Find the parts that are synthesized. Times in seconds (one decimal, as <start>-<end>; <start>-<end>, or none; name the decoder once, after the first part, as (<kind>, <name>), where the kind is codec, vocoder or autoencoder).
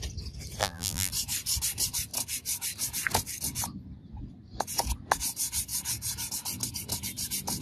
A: 0.6-1.1 (vocoder, BigVGAN v2)